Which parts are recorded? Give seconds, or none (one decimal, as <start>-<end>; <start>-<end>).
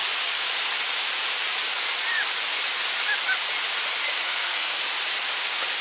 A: 0.0-4.2; 4.8-5.8